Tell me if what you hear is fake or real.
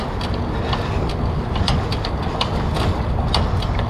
real